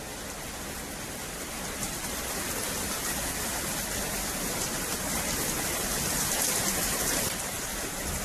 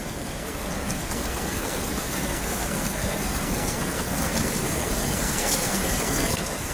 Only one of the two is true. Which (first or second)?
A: first